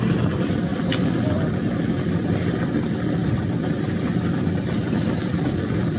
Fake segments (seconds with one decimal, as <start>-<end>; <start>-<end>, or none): none